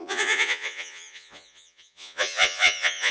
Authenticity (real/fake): fake